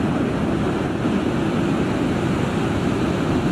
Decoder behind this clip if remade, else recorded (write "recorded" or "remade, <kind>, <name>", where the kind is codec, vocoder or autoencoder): recorded